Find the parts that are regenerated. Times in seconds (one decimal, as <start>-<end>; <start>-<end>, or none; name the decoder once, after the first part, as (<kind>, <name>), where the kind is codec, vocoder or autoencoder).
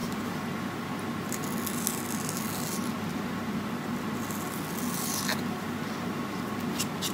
none